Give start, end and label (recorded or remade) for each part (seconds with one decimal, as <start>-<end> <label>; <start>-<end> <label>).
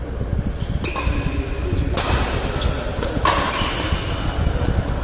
0.0-5.0 recorded